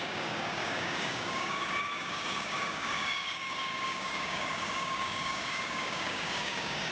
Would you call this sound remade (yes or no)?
yes